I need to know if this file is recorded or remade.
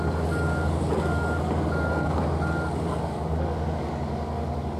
remade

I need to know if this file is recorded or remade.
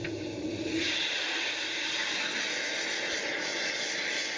recorded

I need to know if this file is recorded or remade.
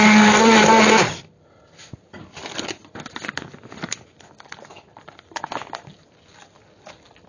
recorded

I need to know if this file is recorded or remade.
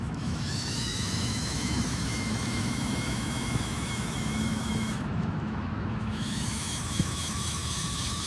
remade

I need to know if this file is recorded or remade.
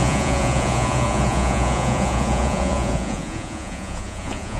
remade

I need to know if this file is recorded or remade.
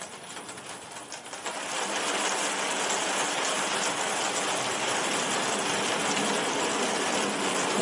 recorded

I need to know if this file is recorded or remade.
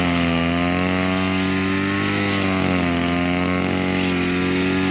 recorded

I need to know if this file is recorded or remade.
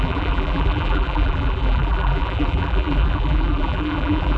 remade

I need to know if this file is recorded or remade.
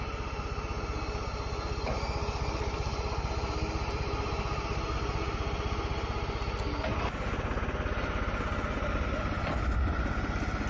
recorded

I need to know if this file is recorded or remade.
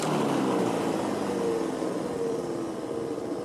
recorded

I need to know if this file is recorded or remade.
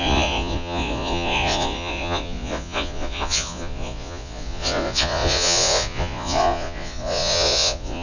remade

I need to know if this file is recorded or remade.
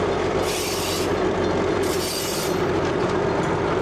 remade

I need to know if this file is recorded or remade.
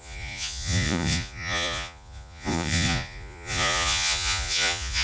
remade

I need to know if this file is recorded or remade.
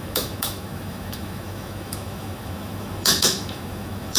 remade